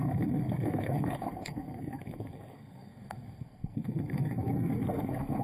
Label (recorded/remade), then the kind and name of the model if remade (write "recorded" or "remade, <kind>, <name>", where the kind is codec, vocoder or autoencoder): remade, codec, SNAC